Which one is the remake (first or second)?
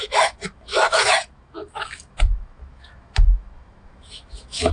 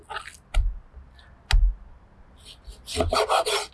first